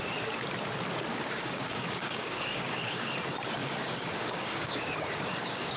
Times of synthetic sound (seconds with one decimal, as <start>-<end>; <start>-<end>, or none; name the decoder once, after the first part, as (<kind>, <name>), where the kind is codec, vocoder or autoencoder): 1.1-3.1 (codec, DAC); 3.6-5.8